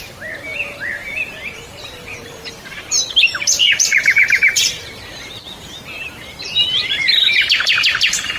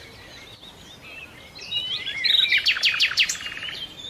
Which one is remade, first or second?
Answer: first